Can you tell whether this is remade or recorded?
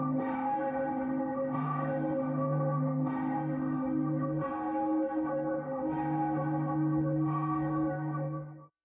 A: remade